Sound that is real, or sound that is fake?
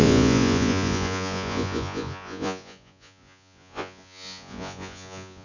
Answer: fake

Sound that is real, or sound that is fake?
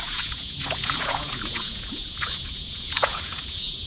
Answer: fake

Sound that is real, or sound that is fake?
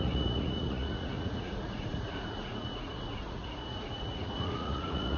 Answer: fake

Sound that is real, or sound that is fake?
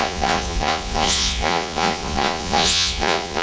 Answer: fake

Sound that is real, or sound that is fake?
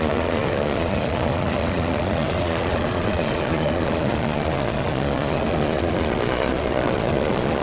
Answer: fake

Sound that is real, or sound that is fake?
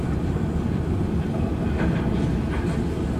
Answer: real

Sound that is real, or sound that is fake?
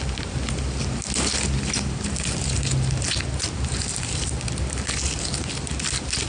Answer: real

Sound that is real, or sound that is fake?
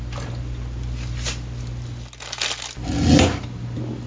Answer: real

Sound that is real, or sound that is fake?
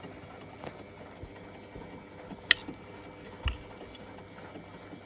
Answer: real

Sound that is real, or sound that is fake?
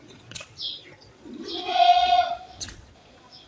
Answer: fake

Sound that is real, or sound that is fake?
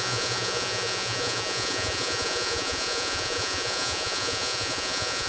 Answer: fake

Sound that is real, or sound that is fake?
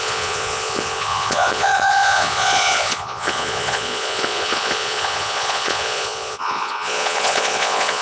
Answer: fake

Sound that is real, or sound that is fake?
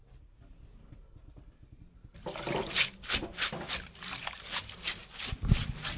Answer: real